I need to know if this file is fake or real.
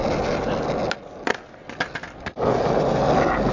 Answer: real